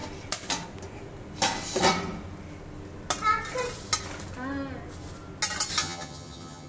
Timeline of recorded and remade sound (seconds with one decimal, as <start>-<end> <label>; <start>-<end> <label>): 0.0-5.8 recorded; 5.8-6.7 remade